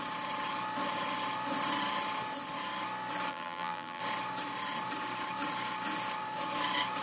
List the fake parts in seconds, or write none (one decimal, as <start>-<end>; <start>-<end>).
3.3-4.0